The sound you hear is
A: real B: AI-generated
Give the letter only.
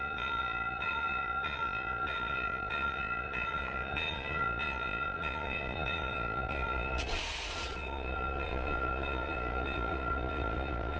B